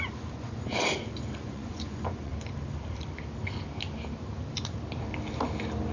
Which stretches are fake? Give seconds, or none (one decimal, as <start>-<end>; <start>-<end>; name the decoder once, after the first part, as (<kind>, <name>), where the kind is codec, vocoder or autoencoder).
0.0-0.7 (vocoder, Vocos); 1.3-2.3